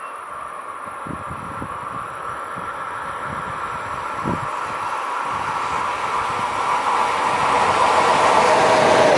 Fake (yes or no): no